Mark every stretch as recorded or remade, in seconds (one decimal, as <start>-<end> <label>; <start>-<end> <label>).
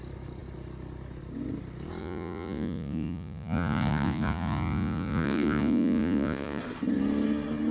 0.0-2.0 recorded; 2.0-6.6 remade; 6.6-7.7 recorded